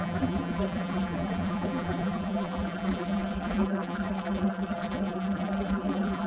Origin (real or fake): fake